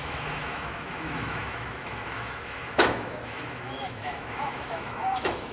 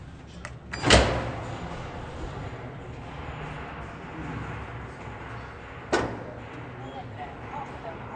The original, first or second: second